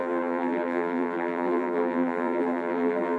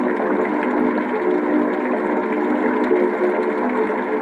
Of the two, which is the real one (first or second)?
second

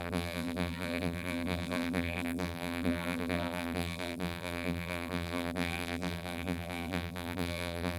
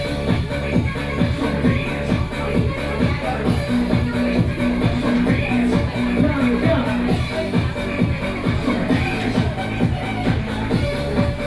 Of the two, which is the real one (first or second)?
second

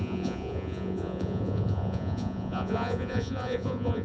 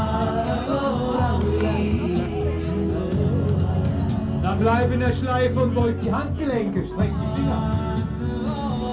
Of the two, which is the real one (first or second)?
second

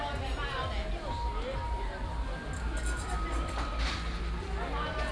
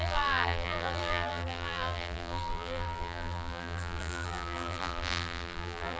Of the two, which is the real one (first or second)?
first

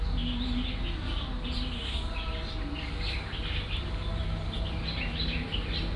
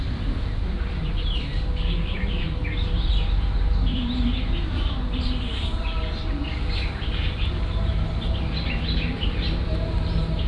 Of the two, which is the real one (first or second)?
first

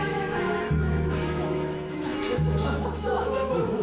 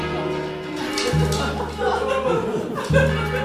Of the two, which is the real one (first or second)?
second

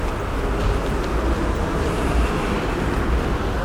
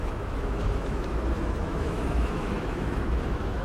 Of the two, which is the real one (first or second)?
first